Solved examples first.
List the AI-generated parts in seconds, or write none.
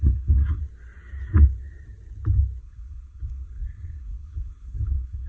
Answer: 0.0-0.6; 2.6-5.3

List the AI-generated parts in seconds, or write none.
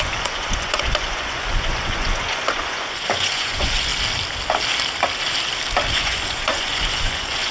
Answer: 0.0-3.9; 5.9-7.5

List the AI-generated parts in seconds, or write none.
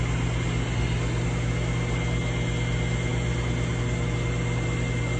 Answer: none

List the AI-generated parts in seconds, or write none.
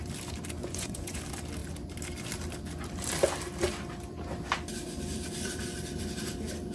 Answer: 0.6-1.2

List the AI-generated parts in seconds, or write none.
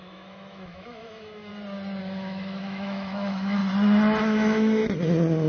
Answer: 0.0-1.5; 2.0-3.6; 4.2-4.8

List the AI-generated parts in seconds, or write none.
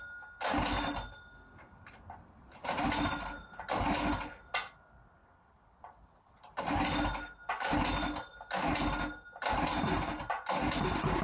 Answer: none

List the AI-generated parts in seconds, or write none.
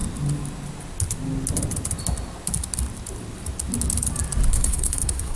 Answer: 4.5-5.4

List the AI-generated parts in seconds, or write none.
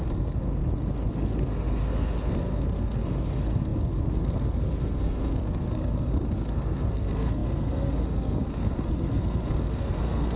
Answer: 0.0-0.6; 1.1-10.4